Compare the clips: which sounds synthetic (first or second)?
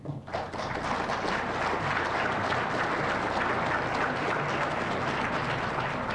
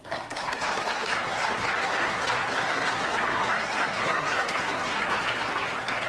second